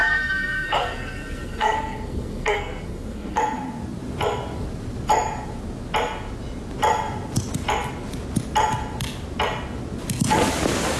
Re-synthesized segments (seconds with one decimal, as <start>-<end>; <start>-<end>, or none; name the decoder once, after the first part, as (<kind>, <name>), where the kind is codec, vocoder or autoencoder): 0.0-3.4 (codec, SNAC)